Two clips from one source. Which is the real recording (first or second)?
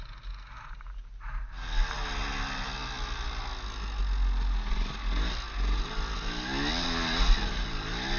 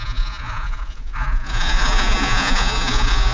first